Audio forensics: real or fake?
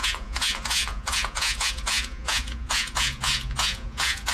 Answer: fake